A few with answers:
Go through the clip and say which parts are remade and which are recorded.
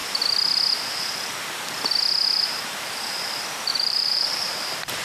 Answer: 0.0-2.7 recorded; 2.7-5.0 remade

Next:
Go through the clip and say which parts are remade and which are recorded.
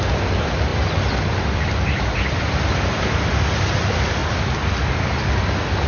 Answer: 0.0-5.9 recorded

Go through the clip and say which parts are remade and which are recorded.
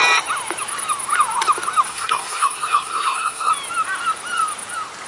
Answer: 0.0-1.9 recorded; 1.9-3.5 remade; 3.5-5.1 recorded